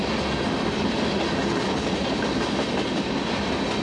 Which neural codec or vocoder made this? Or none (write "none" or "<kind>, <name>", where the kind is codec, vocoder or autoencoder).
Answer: none